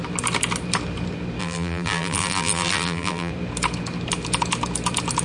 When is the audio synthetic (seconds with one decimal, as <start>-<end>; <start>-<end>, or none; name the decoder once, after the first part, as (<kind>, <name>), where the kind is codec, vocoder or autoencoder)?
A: 1.4-3.3 (vocoder, BigVGAN v2)